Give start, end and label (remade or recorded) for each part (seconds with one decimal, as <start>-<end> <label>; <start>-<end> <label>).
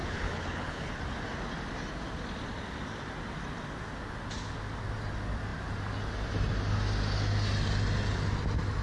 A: 0.0-0.9 remade; 0.9-8.8 recorded